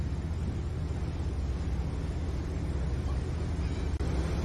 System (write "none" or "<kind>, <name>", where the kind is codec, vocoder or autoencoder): none